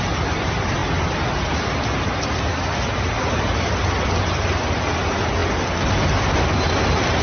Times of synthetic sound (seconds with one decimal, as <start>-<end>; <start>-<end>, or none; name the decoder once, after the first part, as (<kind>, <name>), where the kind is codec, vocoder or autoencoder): none